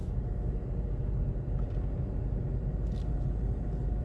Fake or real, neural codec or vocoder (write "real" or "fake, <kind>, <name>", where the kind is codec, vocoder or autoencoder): real